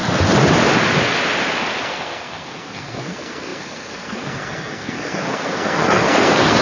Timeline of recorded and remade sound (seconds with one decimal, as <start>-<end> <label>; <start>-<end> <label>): 0.0-1.8 recorded; 1.8-6.6 remade